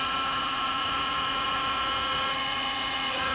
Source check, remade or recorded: remade